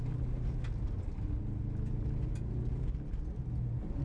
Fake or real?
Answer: real